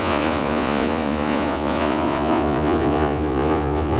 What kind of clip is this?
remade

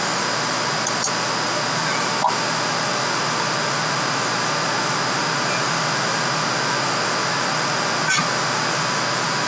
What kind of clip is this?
recorded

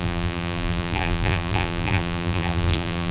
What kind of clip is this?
remade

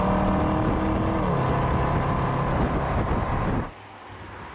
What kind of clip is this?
recorded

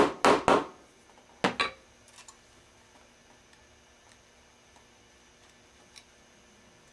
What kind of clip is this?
recorded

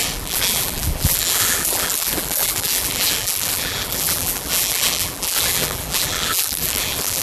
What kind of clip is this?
remade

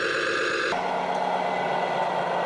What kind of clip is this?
recorded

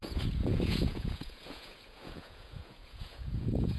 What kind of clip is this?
remade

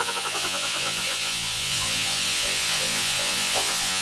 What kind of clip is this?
remade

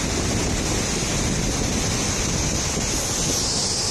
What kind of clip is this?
recorded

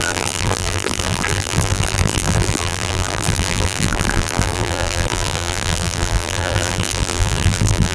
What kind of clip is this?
remade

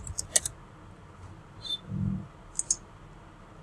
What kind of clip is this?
recorded